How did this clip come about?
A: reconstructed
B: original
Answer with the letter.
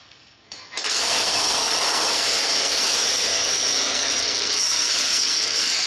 A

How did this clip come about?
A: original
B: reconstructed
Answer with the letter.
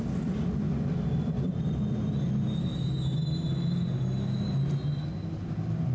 A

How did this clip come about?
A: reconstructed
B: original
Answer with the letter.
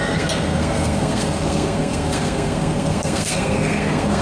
A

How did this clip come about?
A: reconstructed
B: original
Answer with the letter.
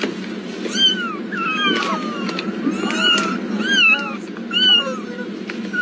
B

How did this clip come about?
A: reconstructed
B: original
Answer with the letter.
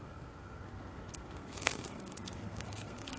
A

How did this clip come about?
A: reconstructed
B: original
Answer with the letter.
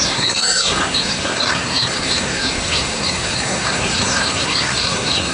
A